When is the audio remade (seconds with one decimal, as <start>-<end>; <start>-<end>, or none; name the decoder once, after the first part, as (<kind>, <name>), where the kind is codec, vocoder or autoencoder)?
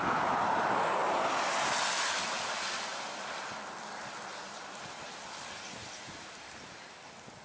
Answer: 5.8-7.4 (vocoder, BigVGAN v2)